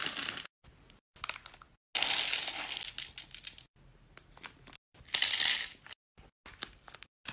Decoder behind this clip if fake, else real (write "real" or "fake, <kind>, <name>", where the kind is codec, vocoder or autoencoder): real